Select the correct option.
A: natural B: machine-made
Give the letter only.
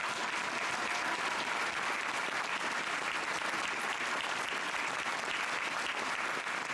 A